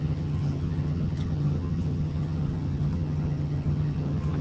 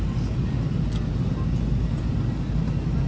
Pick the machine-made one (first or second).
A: first